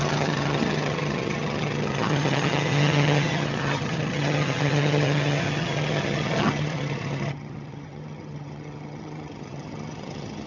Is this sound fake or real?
fake